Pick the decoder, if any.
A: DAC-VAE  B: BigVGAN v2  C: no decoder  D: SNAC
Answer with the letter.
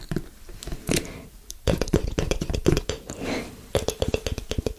C